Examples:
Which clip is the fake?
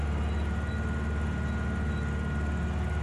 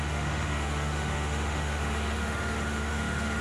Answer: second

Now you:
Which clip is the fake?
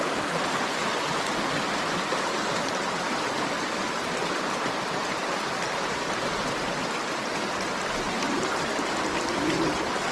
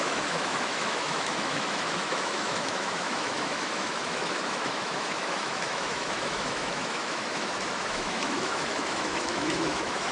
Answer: second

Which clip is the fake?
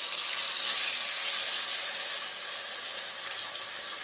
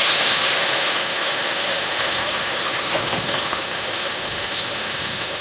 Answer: second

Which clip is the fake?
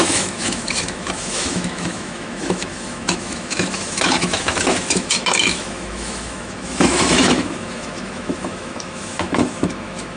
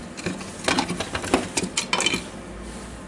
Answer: first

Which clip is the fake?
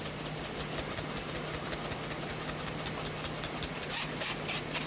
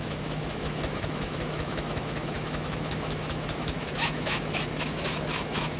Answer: second